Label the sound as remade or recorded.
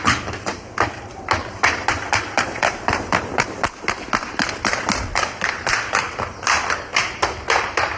remade